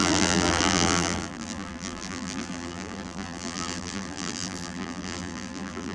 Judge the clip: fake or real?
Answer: fake